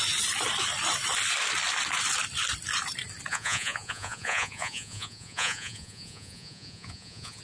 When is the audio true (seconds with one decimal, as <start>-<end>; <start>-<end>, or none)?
0.0-3.3